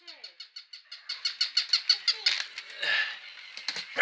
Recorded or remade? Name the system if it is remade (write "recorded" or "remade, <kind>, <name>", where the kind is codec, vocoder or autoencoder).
recorded